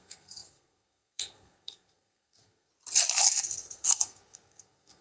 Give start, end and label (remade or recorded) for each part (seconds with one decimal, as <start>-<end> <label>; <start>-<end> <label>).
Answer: 0.0-2.7 remade; 2.7-3.3 recorded; 3.3-5.0 remade